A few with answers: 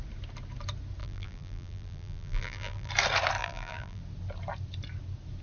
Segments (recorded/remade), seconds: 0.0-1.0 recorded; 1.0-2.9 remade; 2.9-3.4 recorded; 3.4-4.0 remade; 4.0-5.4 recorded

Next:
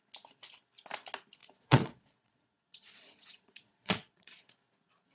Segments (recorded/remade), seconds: 0.0-1.4 recorded; 1.4-4.5 remade; 4.5-5.1 recorded

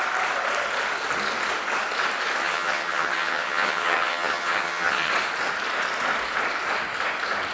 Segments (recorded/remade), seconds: 0.0-2.4 recorded; 2.4-5.1 remade; 5.1-7.5 recorded

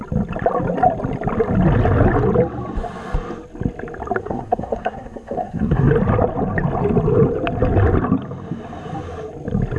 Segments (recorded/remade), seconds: 0.0-4.2 recorded; 4.2-5.9 remade; 5.9-9.8 recorded

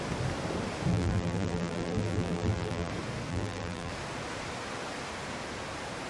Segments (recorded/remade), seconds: 0.0-0.9 recorded; 0.9-2.9 remade; 2.9-3.3 recorded; 3.3-3.9 remade; 3.9-6.1 recorded